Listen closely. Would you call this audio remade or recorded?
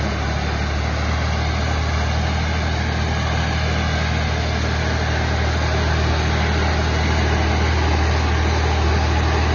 recorded